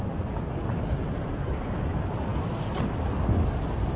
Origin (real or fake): real